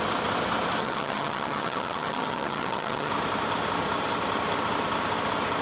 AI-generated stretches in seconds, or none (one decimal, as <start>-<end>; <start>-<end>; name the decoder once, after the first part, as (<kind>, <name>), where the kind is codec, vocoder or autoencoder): 0.8-3.1 (vocoder, HiFi-GAN)